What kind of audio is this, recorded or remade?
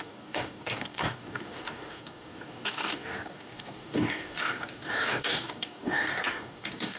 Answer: remade